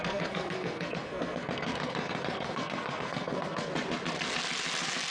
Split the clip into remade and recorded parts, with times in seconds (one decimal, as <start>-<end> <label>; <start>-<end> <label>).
0.0-3.7 remade; 3.7-5.1 recorded